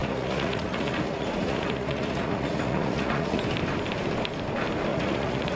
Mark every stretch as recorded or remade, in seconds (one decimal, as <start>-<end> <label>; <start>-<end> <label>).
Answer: 0.0-3.4 remade; 3.4-4.9 recorded; 4.9-5.6 remade